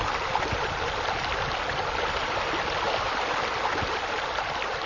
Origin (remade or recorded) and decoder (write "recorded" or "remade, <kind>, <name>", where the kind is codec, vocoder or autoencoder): recorded